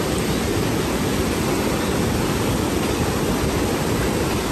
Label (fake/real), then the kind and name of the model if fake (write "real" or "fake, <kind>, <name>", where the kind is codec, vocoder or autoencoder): real